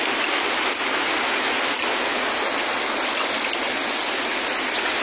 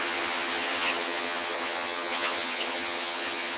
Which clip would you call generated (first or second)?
second